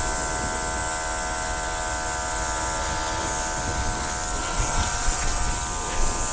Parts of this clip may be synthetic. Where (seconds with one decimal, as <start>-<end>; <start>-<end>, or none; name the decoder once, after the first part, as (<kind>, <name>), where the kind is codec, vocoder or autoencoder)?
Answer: 4.4-5.4 (vocoder, WaveNeXt)